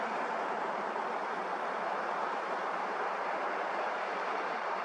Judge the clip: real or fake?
fake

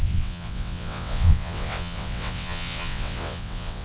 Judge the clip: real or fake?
fake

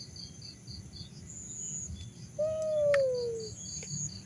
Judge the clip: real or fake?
real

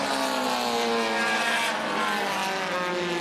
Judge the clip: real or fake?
real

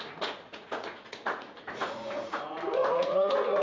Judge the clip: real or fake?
fake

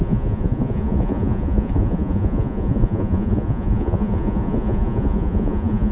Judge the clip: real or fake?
fake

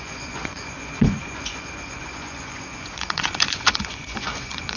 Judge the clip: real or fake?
fake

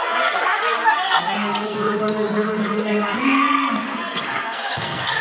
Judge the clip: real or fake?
fake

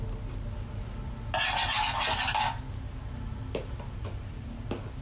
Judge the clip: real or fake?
real